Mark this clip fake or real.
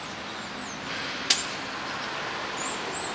real